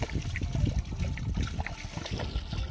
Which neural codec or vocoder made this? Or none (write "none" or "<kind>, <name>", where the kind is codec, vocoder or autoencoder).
none